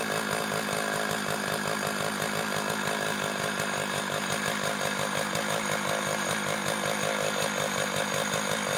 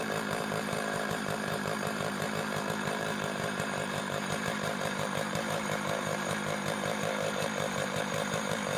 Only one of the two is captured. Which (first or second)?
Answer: first